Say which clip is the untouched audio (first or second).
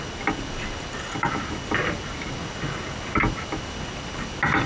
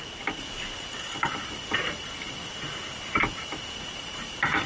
first